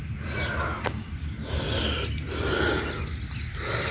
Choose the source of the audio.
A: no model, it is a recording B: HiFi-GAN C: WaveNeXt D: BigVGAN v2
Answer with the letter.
A